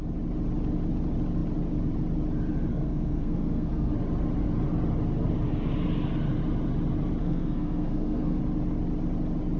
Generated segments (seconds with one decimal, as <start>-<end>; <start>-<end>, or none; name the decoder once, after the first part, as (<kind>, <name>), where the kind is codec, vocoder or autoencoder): 2.7-3.9 (codec, SNAC); 7.2-8.4